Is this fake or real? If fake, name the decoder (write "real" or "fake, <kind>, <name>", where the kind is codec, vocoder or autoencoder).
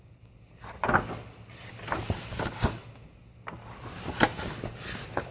real